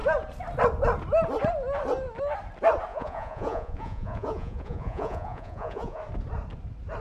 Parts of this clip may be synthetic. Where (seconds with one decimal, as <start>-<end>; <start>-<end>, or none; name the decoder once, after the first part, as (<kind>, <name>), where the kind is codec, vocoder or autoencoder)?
2.9-6.0 (vocoder, Vocos)